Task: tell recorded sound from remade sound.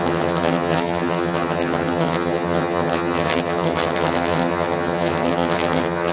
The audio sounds remade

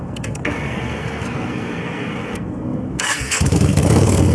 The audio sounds remade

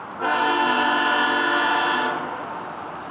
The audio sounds recorded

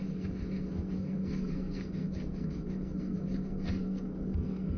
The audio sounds remade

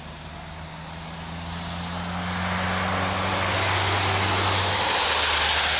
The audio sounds recorded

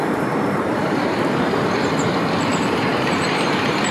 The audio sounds remade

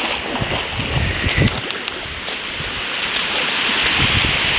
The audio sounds recorded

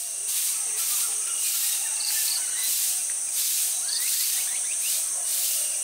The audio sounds remade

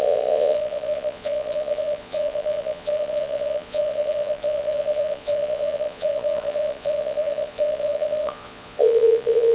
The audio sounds remade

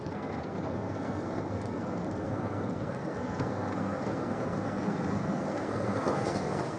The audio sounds remade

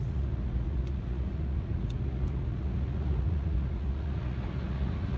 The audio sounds remade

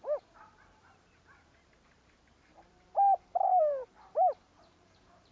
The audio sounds remade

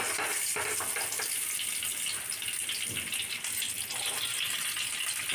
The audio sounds recorded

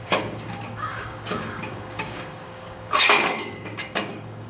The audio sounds remade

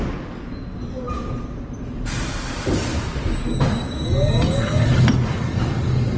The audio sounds recorded